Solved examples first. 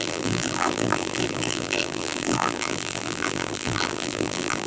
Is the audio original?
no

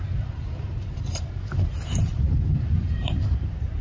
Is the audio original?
no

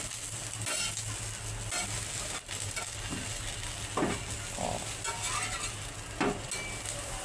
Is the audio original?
yes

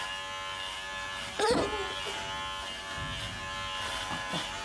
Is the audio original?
yes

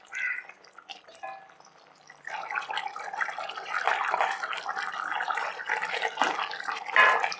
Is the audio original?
no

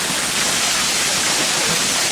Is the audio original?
yes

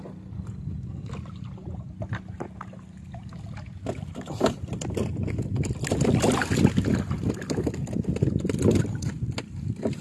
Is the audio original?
yes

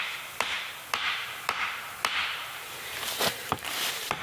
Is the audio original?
no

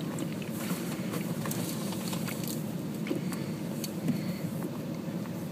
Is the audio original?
yes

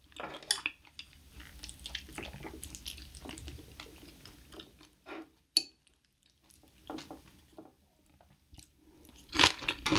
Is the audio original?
yes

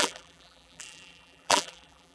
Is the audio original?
no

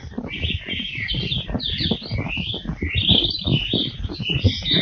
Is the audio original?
yes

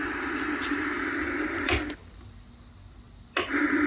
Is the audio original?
yes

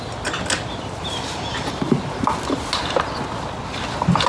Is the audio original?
yes